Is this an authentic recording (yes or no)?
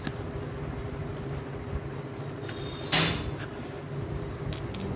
yes